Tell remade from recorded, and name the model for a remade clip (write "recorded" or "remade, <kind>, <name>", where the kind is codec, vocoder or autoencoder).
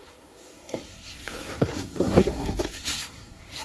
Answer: remade, codec, SNAC